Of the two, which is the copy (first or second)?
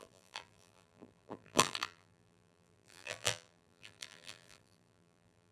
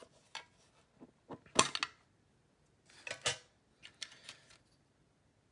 first